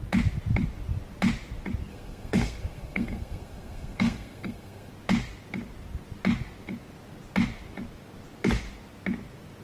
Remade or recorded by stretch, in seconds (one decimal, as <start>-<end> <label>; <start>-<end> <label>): 0.0-1.9 recorded; 1.9-4.9 remade; 4.9-9.6 recorded